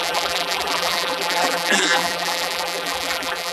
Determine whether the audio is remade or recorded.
remade